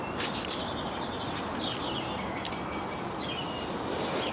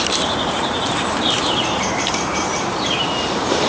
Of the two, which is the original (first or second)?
first